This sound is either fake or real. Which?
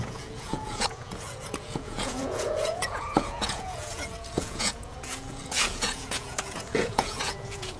fake